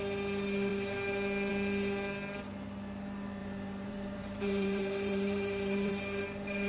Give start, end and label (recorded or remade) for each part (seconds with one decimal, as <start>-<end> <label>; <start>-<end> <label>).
0.0-3.4 recorded; 3.4-5.9 remade; 5.9-6.7 recorded